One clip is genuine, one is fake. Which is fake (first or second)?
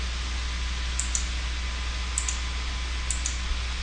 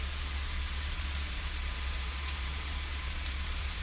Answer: second